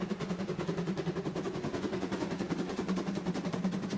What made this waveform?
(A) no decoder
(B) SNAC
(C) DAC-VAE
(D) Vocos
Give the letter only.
D